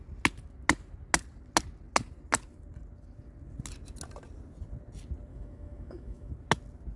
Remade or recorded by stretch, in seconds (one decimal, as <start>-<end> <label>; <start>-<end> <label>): 0.0-5.3 recorded; 5.3-6.3 remade; 6.3-7.0 recorded